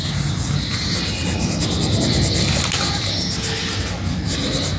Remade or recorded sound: recorded